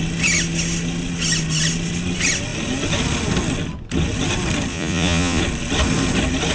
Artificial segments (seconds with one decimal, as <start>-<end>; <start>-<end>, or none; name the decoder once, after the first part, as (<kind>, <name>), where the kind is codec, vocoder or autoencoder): 4.7-5.4 (vocoder, Vocos)